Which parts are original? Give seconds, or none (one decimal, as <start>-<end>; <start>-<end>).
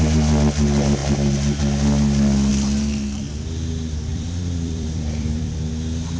0.0-2.5; 3.3-4.1; 5.7-6.2